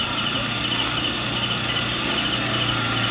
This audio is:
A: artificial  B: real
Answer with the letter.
B